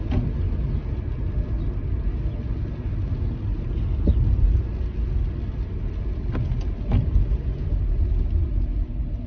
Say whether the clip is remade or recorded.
recorded